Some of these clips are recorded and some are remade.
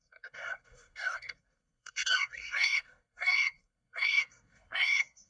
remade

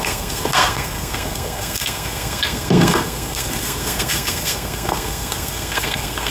remade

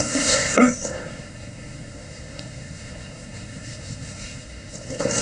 remade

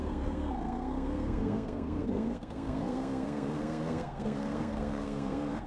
remade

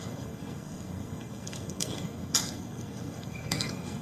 remade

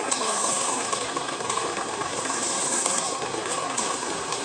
remade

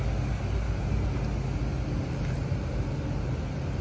recorded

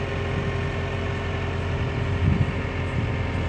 recorded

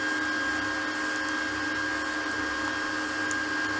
recorded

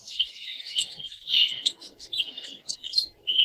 remade